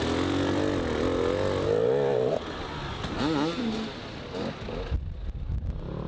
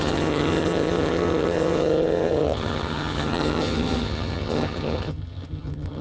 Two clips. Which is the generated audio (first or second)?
second